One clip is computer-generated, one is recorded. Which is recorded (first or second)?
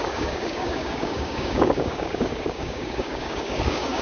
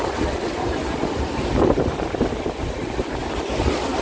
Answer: second